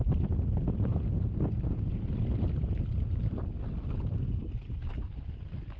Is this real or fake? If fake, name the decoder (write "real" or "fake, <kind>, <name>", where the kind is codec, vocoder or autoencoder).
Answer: real